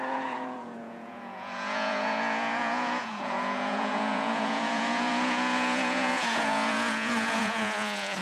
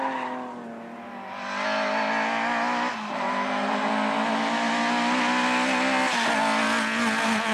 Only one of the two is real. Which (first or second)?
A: second